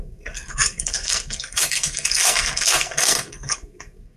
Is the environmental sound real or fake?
fake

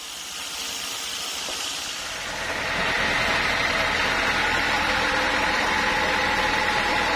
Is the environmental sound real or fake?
real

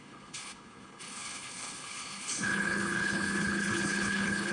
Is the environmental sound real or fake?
fake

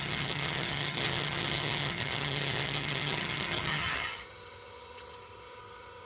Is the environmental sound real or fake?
fake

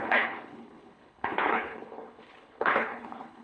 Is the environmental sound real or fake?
fake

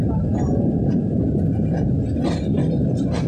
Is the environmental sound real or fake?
real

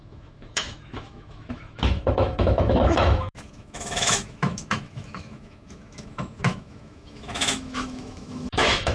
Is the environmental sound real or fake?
fake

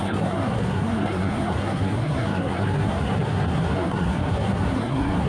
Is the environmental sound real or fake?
fake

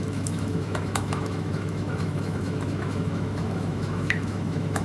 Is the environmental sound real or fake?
fake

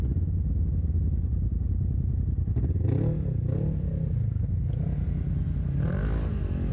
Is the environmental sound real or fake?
real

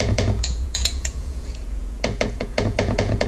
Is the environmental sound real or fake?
fake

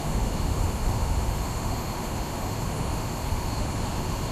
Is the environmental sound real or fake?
fake